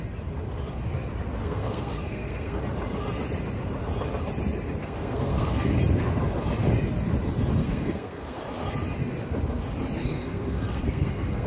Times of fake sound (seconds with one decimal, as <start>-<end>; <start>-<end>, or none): 1.4-2.6; 4.8-5.8; 7.6-8.4; 10.0-11.5